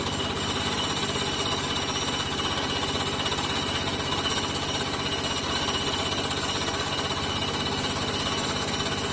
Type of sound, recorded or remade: recorded